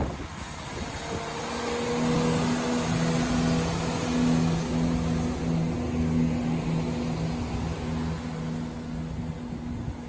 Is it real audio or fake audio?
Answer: real